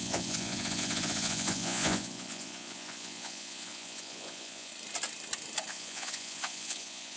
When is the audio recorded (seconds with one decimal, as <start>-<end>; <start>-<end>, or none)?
4.7-5.7